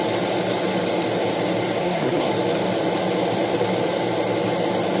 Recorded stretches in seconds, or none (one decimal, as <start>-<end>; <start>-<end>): 0.0-1.8; 2.3-5.0

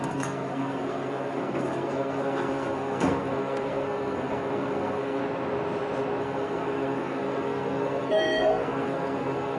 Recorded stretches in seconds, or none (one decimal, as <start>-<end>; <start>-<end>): 5.2-6.2